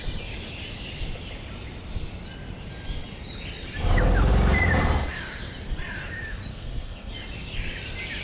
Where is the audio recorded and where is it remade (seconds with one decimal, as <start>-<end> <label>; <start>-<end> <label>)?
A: 0.0-6.5 recorded; 6.5-7.1 remade; 7.1-8.2 recorded